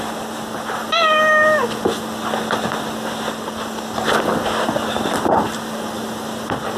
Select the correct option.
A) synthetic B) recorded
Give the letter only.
B